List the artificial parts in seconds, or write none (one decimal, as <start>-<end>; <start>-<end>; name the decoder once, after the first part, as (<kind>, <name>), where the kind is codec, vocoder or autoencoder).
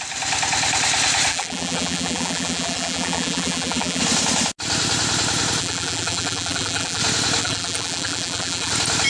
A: 1.3-4.0 (vocoder, BigVGAN v2); 5.6-7.0; 7.4-8.7